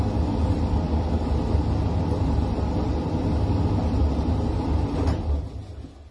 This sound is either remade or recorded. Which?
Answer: recorded